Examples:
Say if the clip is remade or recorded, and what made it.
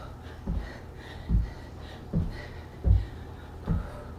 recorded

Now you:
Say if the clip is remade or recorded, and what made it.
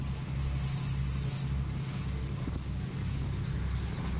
recorded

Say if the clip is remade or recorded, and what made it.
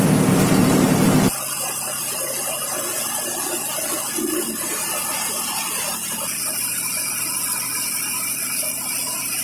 remade, vocoder, BigVGAN v2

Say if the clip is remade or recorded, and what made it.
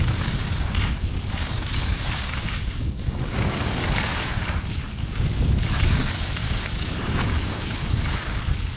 remade, codec, DAC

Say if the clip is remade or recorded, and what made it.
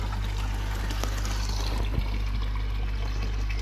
recorded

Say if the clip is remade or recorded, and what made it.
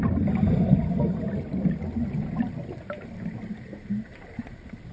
recorded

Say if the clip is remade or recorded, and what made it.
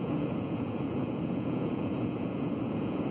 remade, vocoder, Vocos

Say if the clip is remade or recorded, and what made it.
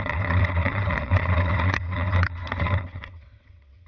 remade, vocoder, WaveNeXt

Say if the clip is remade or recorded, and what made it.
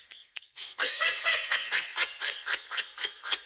remade, codec, SNAC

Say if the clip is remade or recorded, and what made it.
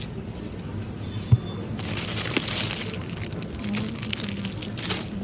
recorded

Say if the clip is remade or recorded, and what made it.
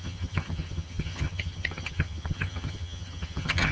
remade, vocoder, HiFi-GAN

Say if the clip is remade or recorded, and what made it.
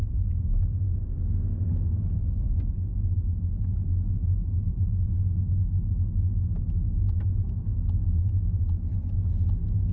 recorded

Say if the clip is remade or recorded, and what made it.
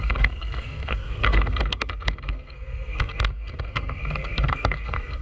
remade, codec, SNAC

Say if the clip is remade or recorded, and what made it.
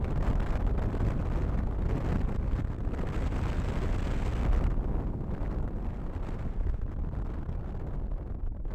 recorded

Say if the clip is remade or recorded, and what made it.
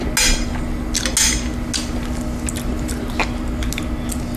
recorded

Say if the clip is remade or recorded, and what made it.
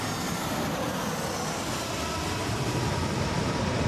recorded